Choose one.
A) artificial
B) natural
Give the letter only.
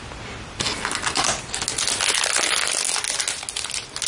B